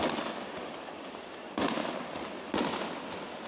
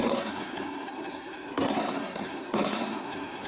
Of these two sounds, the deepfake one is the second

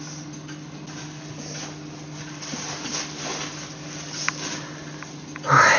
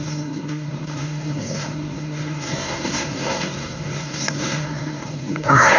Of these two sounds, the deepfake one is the second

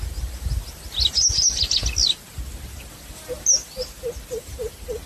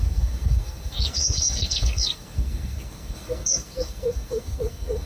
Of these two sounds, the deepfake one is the second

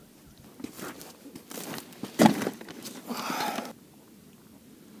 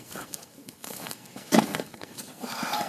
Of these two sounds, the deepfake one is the second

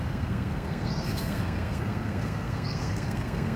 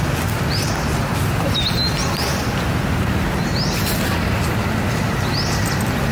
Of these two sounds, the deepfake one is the first